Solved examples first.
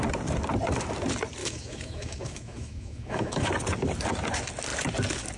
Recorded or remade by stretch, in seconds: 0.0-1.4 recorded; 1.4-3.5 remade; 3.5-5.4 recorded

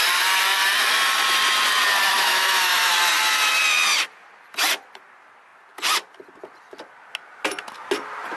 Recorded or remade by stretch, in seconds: 0.0-2.1 recorded; 2.1-2.9 remade; 2.9-8.4 recorded

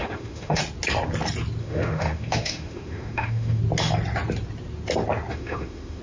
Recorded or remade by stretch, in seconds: 0.0-0.6 remade; 0.6-1.6 recorded; 1.6-3.6 remade; 3.6-5.3 recorded; 5.3-6.0 remade

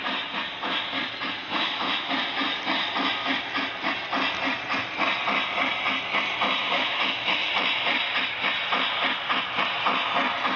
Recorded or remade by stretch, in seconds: 0.0-1.4 recorded; 1.4-2.1 remade; 2.1-6.6 recorded; 6.6-7.5 remade; 7.5-10.6 recorded

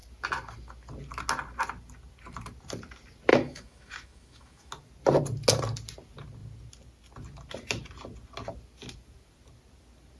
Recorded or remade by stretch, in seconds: 0.0-3.3 recorded; 3.3-4.7 remade; 4.7-10.2 recorded